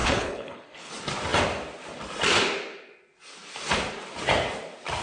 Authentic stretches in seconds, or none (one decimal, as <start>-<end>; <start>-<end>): 0.9-5.0